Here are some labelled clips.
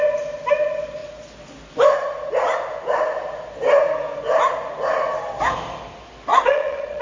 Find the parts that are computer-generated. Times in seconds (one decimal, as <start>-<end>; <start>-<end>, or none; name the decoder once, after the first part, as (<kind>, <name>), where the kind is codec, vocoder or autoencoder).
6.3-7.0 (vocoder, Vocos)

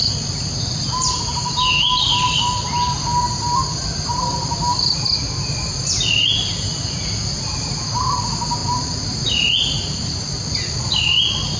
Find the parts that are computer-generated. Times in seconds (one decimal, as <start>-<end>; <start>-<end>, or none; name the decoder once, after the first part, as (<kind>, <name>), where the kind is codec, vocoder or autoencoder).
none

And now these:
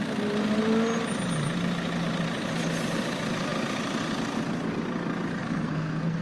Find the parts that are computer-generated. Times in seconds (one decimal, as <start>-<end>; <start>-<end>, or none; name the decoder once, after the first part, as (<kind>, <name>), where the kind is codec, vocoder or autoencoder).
5.4-6.2 (codec, SNAC)

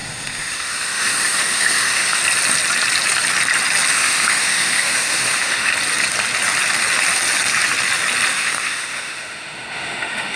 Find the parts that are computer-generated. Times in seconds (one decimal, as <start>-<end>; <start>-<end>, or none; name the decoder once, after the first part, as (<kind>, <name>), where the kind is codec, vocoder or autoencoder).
0.0-2.2 (autoencoder, DAC-VAE); 3.9-5.7; 8.3-10.4

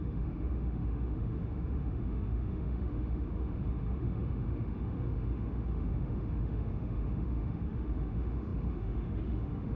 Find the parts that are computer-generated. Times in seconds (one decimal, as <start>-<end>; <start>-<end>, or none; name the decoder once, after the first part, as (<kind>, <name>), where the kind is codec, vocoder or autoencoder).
0.0-9.8 (autoencoder, DAC-VAE)

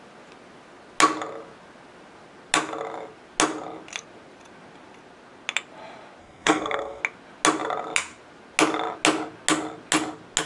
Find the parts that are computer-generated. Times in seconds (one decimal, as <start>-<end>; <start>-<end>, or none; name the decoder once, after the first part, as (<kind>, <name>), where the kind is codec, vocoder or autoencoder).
6.2-7.0 (codec, SNAC)

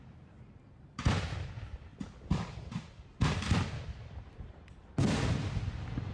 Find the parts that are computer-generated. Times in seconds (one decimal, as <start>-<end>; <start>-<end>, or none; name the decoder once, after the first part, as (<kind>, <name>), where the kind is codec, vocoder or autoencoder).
none

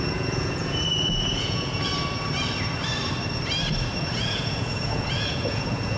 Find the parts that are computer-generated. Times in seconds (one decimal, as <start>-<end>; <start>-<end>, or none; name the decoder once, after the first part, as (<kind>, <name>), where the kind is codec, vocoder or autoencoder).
0.0-1.9 (vocoder, Vocos); 4.0-6.0